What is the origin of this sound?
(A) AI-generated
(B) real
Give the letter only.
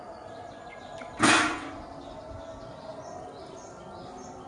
B